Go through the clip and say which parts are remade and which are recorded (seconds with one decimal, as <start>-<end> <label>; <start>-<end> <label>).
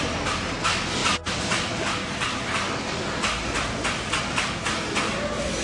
0.0-5.6 recorded